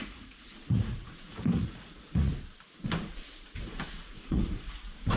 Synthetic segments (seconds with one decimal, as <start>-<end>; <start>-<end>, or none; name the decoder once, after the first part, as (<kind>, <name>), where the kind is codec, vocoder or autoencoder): 0.0-2.3 (vocoder, Vocos); 3.0-5.2